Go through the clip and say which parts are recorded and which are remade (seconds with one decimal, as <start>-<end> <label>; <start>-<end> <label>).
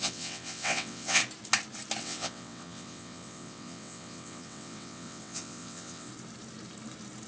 0.0-1.2 remade; 1.2-2.0 recorded; 2.0-6.1 remade; 6.1-7.3 recorded